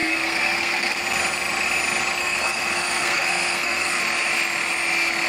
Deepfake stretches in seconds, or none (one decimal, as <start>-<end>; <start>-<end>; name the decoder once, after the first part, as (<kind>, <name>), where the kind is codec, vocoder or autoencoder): 0.0-1.0 (codec, SNAC); 2.2-4.0